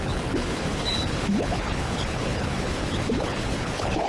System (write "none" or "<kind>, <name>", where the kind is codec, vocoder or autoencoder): codec, HILCodec